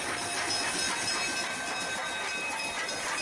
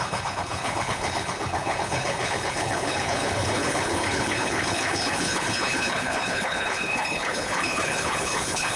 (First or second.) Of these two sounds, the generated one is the second